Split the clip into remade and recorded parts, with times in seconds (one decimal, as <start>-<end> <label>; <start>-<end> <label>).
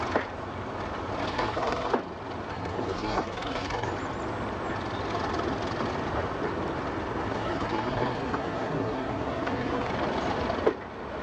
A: 0.0-1.3 recorded; 1.3-1.9 remade; 1.9-2.5 recorded; 2.5-3.9 remade; 3.9-7.3 recorded; 7.3-9.9 remade; 9.9-11.2 recorded